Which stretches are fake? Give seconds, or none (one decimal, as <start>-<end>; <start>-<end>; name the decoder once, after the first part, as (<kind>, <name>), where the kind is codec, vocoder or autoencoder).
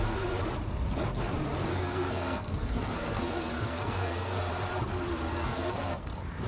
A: 1.7-4.4 (codec, SNAC); 5.3-6.1